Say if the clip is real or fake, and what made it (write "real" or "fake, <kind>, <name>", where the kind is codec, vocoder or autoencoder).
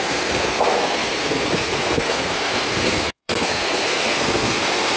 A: fake, codec, SNAC